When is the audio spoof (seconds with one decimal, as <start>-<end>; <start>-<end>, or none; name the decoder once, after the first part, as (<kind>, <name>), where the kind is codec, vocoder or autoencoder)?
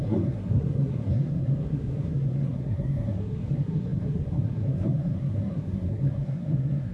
0.0-6.9 (codec, SNAC)